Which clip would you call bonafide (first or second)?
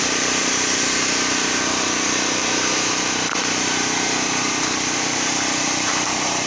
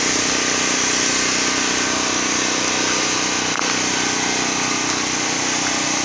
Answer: second